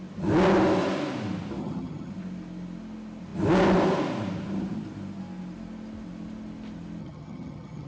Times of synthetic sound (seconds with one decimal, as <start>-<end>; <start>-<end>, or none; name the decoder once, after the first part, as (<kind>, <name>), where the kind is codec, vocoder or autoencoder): 1.6-2.1 (vocoder, HiFi-GAN); 7.0-7.9